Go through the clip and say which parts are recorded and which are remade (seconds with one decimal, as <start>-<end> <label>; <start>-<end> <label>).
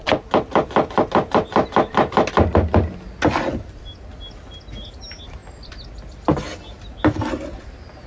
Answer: 0.0-8.1 recorded